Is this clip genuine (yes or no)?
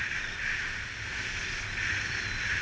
yes